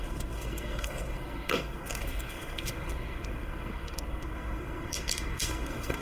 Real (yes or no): no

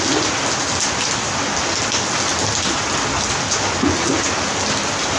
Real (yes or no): yes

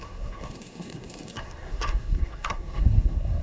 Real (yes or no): no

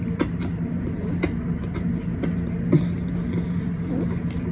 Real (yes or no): yes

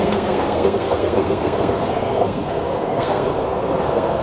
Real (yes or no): no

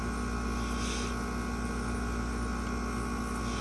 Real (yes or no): yes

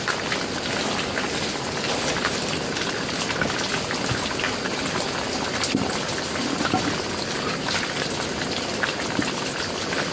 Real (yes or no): yes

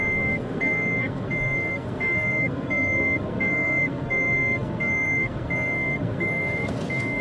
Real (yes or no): no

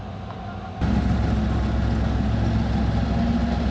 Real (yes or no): yes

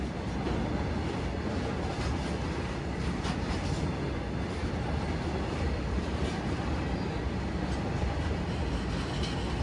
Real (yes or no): yes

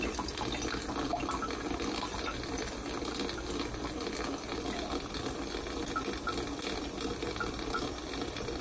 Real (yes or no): yes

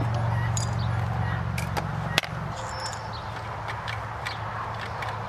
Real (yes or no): yes